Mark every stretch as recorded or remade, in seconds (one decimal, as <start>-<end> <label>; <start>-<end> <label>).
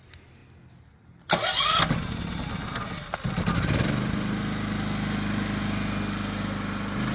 0.0-7.1 recorded